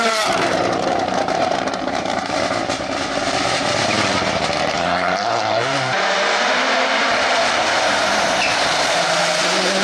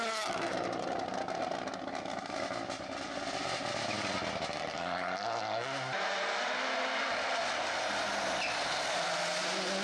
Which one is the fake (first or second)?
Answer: first